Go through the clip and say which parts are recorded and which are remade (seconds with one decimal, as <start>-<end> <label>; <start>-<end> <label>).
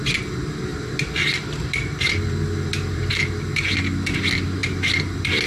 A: 0.0-0.7 recorded; 0.7-3.1 remade; 3.1-4.6 recorded; 4.6-5.5 remade